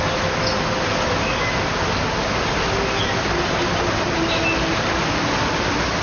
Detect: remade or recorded recorded